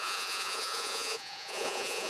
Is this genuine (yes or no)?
no